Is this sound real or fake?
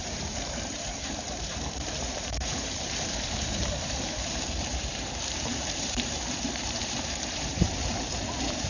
fake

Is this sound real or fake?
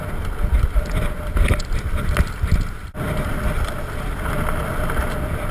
real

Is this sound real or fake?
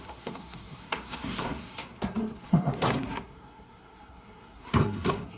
fake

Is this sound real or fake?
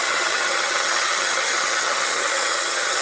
fake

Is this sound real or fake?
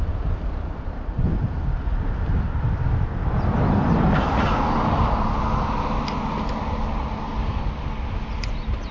real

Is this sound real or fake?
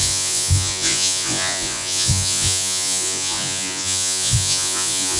fake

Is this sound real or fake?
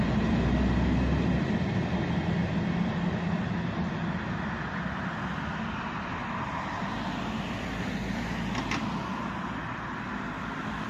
real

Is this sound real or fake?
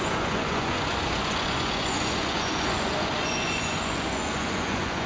fake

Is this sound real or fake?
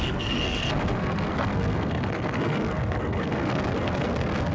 fake